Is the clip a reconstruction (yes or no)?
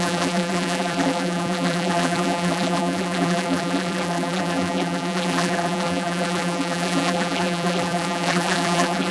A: yes